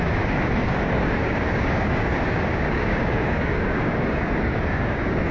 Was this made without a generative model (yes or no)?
no